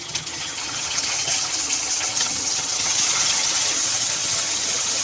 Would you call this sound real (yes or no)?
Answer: no